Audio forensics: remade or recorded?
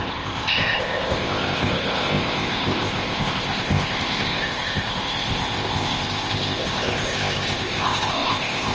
remade